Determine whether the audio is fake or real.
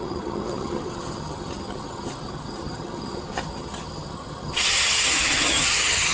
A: fake